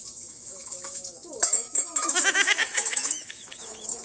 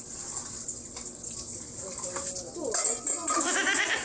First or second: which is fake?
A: first